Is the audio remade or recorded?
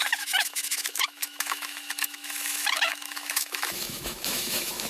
remade